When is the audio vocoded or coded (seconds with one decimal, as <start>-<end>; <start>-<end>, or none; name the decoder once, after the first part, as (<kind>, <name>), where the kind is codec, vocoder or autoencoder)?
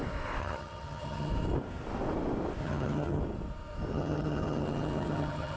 0.4-1.3 (vocoder, HiFi-GAN); 2.6-3.2; 3.9-5.6